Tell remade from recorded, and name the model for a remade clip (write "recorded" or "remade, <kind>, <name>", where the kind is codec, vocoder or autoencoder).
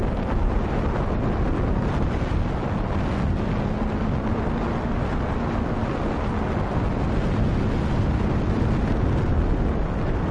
recorded